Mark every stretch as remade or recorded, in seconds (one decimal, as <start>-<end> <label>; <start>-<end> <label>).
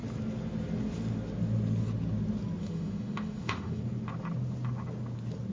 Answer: 0.0-2.6 recorded; 2.6-3.8 remade; 3.8-5.5 recorded